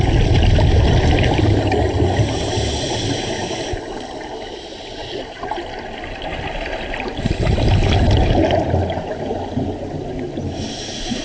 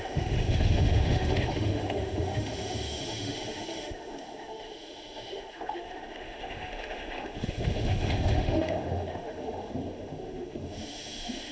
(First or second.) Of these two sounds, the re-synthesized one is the second